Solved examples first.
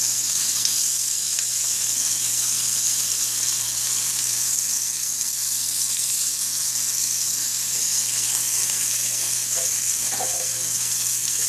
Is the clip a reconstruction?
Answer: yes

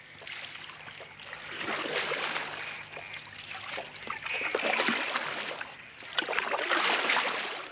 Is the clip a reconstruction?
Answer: no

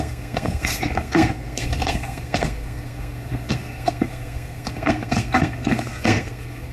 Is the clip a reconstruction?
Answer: yes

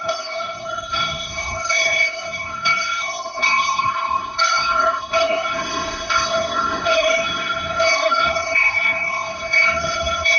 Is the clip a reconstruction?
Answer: yes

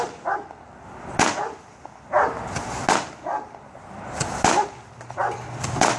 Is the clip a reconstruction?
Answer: no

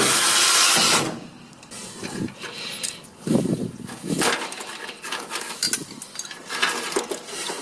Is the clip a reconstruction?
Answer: no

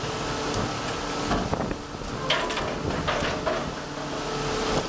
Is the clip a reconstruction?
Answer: no